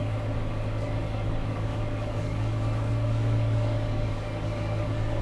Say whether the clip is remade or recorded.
remade